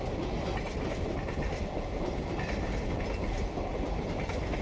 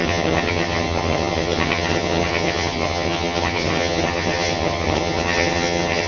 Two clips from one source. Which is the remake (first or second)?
second